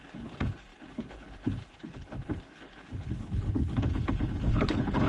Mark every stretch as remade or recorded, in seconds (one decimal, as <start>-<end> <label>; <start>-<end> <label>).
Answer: 0.0-5.1 remade